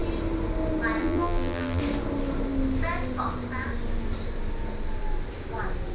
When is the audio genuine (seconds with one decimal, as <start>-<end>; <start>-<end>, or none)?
0.0-1.0; 1.8-5.9